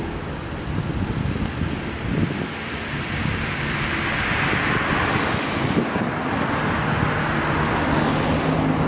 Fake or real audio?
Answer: real